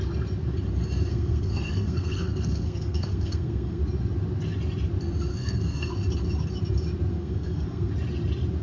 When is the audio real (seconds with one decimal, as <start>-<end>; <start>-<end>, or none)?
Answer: 0.0-1.1; 3.8-5.3; 5.9-7.1; 7.9-8.6